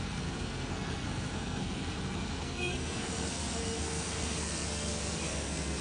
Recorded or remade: remade